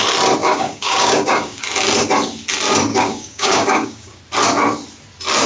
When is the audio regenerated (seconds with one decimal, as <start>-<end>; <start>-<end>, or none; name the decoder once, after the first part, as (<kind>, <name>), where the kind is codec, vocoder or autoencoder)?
0.4-1.6 (codec, DAC); 2.9-4.2